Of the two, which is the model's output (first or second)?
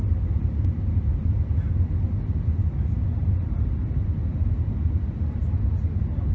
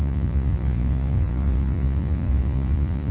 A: second